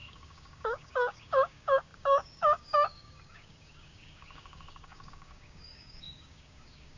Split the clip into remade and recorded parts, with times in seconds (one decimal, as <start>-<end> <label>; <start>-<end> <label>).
0.0-7.0 remade